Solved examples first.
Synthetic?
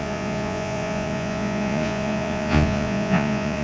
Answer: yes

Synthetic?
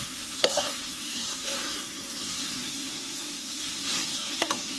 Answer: yes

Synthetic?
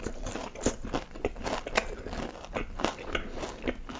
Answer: no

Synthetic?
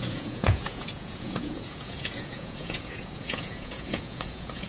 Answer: yes